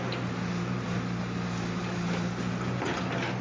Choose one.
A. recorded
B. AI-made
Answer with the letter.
A